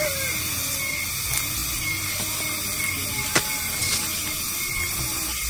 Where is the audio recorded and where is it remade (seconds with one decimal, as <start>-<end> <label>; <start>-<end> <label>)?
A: 0.0-5.5 recorded